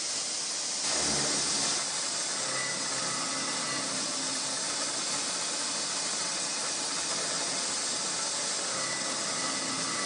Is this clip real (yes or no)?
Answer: yes